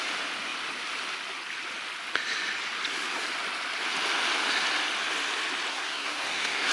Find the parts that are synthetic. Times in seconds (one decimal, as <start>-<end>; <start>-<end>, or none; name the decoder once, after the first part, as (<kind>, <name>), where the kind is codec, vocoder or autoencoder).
5.7-6.7 (codec, SNAC)